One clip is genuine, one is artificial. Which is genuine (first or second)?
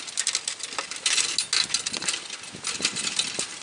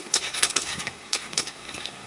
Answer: first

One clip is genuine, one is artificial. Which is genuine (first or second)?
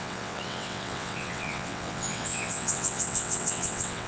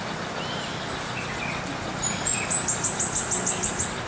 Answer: second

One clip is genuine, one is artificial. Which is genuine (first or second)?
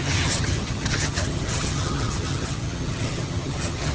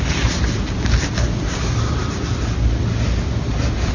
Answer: second